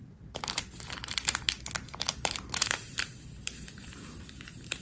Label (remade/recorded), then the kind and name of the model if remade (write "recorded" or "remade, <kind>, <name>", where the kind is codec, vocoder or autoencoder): remade, vocoder, BigVGAN v2